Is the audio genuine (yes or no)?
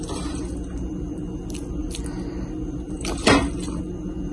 yes